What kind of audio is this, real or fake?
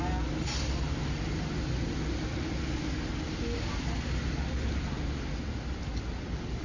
real